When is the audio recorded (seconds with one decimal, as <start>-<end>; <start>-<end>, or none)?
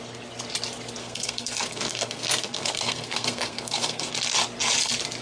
0.0-1.0; 4.1-5.2